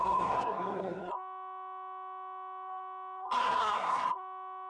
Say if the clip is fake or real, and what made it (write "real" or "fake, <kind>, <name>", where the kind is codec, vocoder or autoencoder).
fake, codec, SNAC